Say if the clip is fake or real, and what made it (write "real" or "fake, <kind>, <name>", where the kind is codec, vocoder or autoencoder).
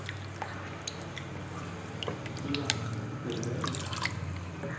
real